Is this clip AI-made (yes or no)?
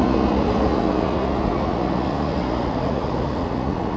yes